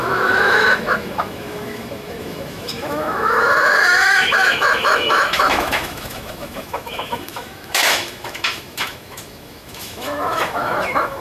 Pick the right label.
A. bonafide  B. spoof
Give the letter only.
B